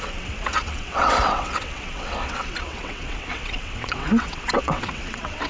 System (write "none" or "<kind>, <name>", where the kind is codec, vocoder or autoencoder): vocoder, WaveNeXt